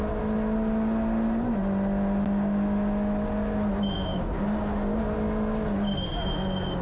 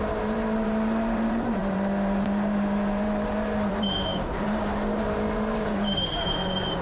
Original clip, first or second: first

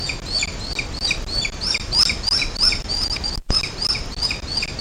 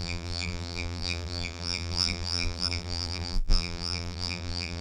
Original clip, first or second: first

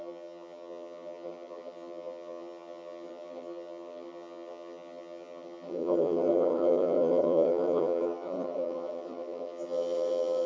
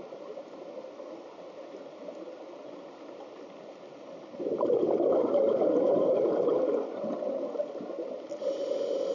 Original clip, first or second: second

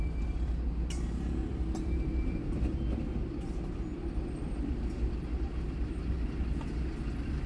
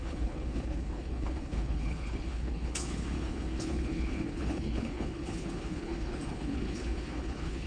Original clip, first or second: first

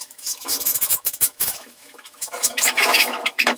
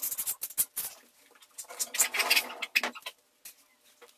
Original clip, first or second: second